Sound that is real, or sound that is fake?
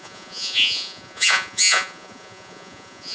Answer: fake